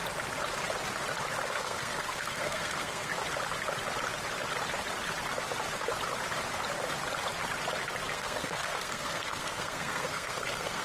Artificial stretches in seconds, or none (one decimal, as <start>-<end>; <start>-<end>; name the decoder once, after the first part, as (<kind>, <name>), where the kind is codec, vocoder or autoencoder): 1.5-3.1 (codec, SNAC); 8.1-10.8